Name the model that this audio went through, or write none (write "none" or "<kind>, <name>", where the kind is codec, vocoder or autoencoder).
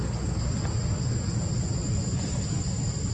none